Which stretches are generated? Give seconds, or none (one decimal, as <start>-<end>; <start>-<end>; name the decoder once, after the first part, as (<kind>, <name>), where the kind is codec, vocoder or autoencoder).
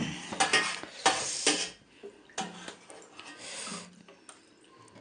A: none